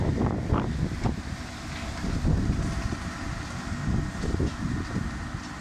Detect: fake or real real